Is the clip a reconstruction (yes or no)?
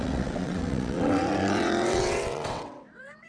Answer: yes